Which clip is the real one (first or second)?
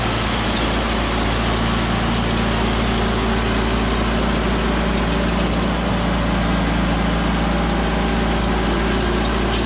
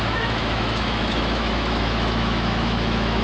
first